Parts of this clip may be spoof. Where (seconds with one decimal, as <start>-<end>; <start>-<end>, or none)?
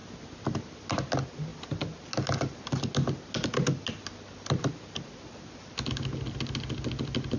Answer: none